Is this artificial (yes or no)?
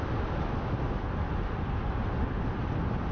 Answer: no